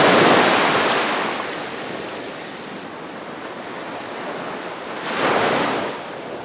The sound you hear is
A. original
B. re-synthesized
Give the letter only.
A